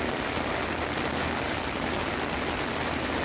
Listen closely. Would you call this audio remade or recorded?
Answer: recorded